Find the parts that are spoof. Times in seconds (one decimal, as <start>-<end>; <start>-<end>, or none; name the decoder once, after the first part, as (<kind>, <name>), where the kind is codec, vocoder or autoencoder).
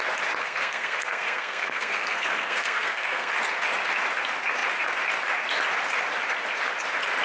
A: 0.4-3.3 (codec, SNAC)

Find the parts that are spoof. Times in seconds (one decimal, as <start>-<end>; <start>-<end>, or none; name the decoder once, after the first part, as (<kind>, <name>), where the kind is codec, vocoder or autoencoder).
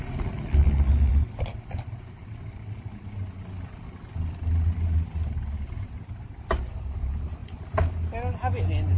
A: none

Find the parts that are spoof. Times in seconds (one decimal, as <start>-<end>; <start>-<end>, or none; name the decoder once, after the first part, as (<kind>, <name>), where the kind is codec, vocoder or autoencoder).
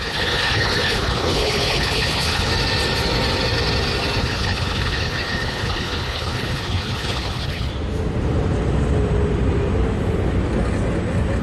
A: 0.0-2.5 (codec, HILCodec); 4.2-7.7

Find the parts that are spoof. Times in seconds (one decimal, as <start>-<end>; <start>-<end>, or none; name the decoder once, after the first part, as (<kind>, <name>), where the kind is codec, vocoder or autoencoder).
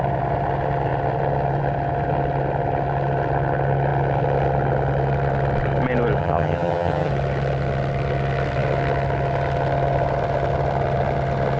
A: 6.2-7.1 (vocoder, HiFi-GAN)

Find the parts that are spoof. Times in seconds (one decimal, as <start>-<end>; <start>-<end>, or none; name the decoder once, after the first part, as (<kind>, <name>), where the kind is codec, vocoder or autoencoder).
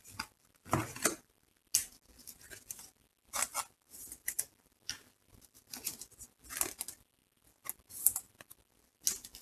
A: none